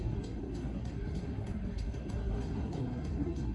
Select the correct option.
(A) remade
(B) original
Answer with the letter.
A